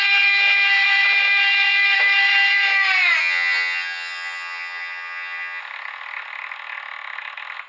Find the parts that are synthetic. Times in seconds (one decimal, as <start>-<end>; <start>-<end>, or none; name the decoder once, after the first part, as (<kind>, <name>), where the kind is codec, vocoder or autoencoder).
3.2-5.6 (vocoder, HiFi-GAN)

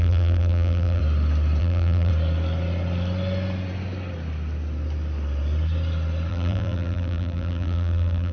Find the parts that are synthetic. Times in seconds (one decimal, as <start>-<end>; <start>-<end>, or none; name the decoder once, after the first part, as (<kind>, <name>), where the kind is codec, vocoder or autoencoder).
0.0-1.0 (vocoder, BigVGAN v2); 1.6-2.1; 6.3-8.3

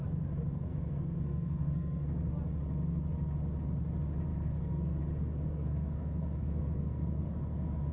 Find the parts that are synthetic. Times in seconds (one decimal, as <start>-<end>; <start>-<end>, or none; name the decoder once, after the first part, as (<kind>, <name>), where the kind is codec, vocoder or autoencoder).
0.7-2.3 (codec, SNAC); 4.3-5.0; 5.5-7.9

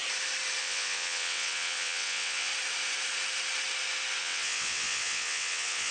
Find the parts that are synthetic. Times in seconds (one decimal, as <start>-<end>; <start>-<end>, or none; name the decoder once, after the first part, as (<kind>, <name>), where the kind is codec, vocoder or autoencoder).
0.6-2.5 (vocoder, WaveNeXt); 4.2-5.9

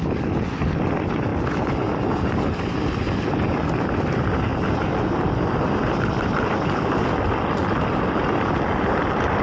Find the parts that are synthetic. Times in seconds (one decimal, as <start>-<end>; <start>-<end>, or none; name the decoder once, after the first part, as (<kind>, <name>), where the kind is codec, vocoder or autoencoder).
7.6-8.3 (vocoder, BigVGAN v2)

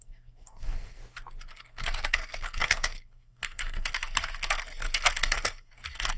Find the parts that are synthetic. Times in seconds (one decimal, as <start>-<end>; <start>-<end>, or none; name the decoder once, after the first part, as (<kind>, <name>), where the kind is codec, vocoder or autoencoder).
0.0-1.0 (codec, SNAC); 1.5-6.2

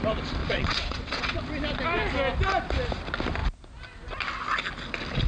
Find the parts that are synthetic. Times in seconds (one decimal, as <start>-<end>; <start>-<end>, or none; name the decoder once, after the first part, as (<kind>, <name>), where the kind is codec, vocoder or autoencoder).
0.4-1.4 (vocoder, WaveNeXt)

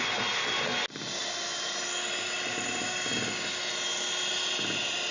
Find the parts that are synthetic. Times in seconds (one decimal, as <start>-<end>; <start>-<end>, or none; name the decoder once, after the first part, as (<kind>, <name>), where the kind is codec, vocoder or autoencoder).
none